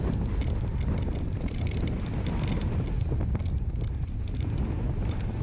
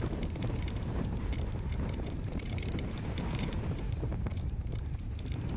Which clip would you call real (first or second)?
first